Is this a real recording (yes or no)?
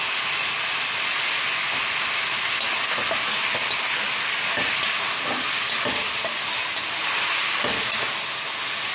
yes